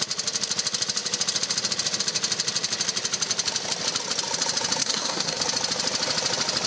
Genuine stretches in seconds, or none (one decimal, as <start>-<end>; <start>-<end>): 0.0-4.8; 5.4-6.7